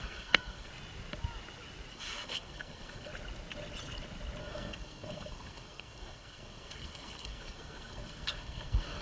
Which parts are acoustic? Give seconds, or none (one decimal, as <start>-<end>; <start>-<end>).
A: 0.7-1.9; 3.1-4.4